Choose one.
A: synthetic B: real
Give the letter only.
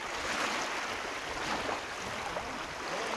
B